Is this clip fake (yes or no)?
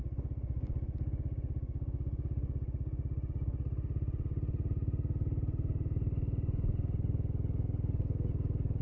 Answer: no